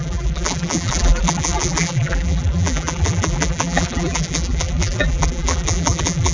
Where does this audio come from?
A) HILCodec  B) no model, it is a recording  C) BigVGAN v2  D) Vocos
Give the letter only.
C